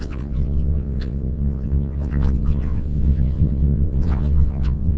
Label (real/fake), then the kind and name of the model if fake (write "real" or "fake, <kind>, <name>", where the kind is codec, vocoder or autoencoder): fake, vocoder, WaveNeXt